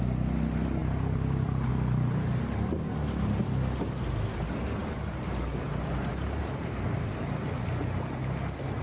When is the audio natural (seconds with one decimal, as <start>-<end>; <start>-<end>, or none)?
0.0-0.8; 1.7-4.8; 7.4-8.8